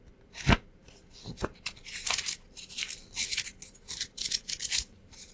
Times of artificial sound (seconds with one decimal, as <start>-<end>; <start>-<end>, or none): none